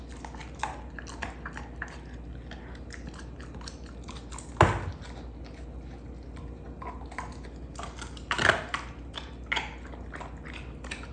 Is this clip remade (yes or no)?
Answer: no